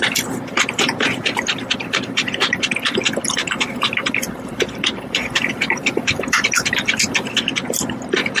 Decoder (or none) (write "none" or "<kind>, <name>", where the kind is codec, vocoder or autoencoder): vocoder, BigVGAN v2